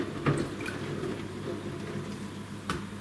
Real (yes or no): yes